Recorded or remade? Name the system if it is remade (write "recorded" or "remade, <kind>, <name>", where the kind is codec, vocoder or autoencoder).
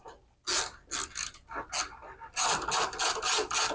recorded